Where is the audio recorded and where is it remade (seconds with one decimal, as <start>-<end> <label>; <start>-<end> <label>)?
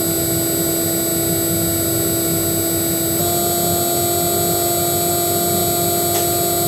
0.0-6.7 recorded